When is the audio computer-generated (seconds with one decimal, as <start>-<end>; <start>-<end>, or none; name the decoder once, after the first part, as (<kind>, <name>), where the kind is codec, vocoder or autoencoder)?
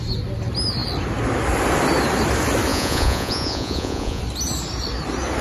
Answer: 2.7-4.2 (vocoder, Vocos)